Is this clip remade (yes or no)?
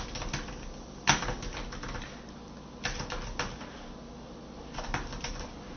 no